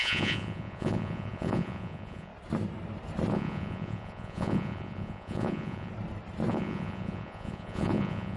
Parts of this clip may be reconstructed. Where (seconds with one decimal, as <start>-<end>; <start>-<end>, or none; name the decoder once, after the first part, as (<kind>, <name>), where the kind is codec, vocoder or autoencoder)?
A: 0.0-2.3 (vocoder, Vocos); 3.3-5.9; 6.5-8.4